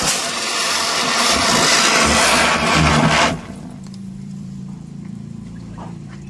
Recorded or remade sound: remade